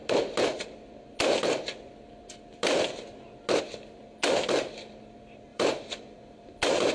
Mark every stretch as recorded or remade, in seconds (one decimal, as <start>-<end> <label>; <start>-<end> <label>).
0.0-5.5 recorded; 5.5-6.5 remade; 6.5-6.9 recorded